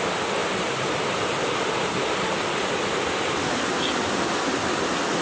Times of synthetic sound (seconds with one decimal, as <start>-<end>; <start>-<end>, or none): none